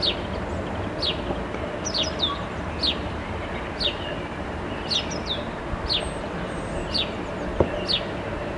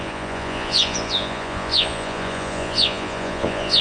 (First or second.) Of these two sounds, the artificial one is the second